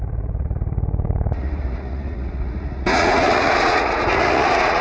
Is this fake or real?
fake